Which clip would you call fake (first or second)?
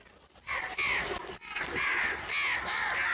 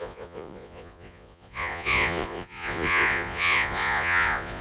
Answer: second